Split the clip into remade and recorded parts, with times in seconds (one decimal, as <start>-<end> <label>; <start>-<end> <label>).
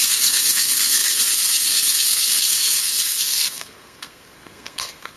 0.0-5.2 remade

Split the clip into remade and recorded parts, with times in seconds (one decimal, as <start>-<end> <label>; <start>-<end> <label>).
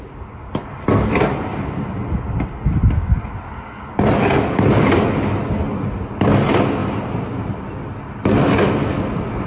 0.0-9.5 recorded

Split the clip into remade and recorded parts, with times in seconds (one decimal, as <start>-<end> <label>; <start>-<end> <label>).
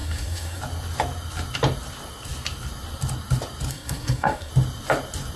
0.0-0.6 remade; 0.6-3.7 recorded; 3.7-4.5 remade; 4.5-5.4 recorded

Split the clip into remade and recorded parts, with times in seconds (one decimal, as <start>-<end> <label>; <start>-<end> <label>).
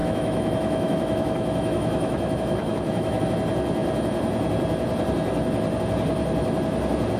0.0-3.2 remade; 3.2-7.2 recorded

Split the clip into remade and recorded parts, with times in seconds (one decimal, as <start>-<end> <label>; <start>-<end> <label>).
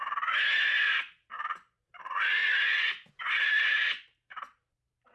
0.0-2.4 remade; 2.4-3.1 recorded; 3.1-5.1 remade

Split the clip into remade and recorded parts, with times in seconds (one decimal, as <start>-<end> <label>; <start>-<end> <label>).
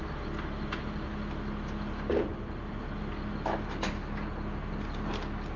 0.0-5.6 recorded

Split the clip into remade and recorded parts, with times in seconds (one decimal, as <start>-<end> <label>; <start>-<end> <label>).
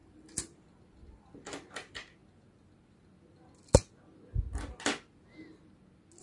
0.0-2.2 remade; 2.2-6.2 recorded